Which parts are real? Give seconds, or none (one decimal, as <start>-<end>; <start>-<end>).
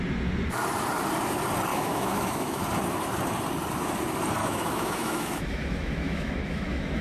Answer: 0.0-1.7; 2.6-4.4